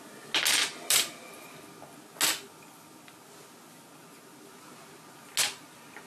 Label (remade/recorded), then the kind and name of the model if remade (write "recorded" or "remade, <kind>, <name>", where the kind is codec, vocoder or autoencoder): recorded